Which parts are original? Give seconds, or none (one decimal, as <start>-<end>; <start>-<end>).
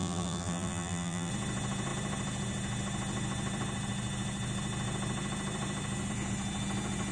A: 1.3-7.1